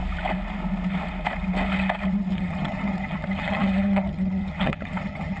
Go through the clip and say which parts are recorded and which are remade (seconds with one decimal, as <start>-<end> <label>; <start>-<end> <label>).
0.0-2.3 recorded; 2.3-5.4 remade